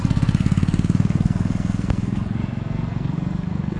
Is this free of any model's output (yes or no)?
no